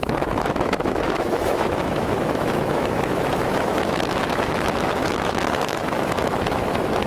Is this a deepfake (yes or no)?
yes